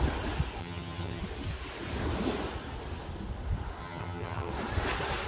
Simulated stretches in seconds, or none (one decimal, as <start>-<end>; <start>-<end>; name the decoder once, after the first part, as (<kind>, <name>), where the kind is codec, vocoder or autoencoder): 0.6-1.2 (vocoder, HiFi-GAN); 3.8-4.5